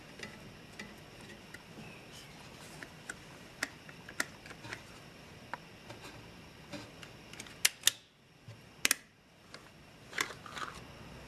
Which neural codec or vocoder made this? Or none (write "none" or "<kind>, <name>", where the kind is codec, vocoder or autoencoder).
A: none